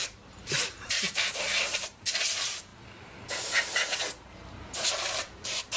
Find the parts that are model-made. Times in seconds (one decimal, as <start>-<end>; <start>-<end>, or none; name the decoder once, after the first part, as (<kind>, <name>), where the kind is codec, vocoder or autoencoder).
0.0-2.7 (vocoder, BigVGAN v2); 4.9-5.8